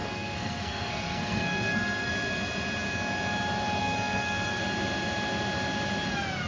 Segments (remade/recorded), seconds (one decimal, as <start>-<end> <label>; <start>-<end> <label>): 0.0-2.1 remade; 2.1-3.8 recorded; 3.8-4.6 remade; 4.6-6.5 recorded